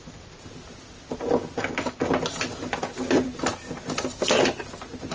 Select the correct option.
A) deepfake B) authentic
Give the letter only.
B